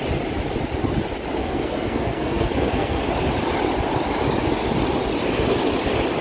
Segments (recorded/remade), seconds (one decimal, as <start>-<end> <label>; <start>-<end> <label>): 0.0-1.4 recorded; 1.4-3.0 remade; 3.0-6.2 recorded